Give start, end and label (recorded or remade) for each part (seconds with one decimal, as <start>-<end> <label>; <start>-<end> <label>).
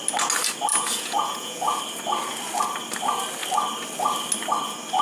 0.0-0.7 recorded; 0.7-1.8 remade; 1.8-5.0 recorded